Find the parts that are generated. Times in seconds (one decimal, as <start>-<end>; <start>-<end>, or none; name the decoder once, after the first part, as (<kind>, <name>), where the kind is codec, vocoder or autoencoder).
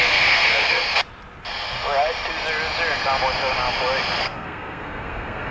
0.0-0.9 (codec, SNAC); 4.2-5.5